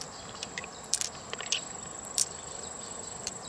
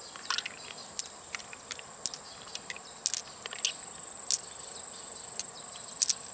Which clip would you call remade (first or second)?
first